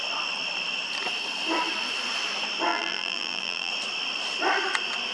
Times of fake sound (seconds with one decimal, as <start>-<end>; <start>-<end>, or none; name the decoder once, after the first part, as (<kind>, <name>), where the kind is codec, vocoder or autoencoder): 2.7-3.7 (vocoder, BigVGAN v2)